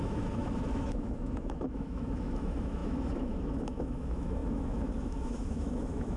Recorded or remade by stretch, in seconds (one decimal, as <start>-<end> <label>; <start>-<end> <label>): 0.0-6.2 remade